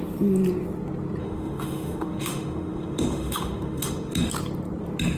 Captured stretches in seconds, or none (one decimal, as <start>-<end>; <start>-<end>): 0.0-1.2; 4.3-5.2